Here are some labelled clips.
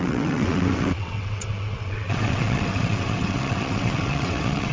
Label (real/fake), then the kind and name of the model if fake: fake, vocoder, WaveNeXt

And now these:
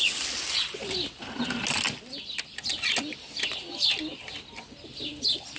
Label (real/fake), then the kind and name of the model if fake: real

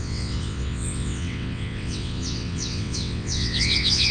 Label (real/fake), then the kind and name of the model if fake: fake, vocoder, WaveNeXt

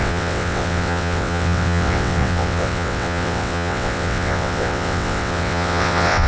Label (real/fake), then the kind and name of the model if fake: fake, vocoder, WaveNeXt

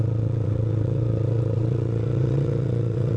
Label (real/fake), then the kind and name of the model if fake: fake, vocoder, WaveNeXt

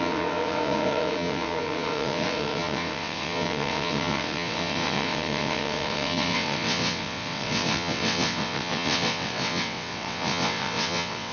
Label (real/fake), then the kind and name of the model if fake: fake, vocoder, WaveNeXt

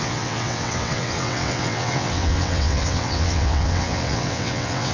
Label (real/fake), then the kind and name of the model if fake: fake, vocoder, WaveNeXt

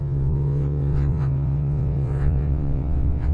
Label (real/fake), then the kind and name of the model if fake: fake, vocoder, WaveNeXt